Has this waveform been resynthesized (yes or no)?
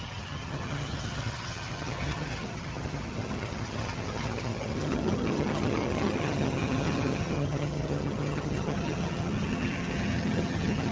yes